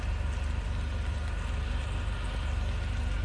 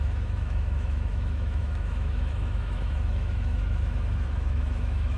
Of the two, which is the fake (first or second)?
second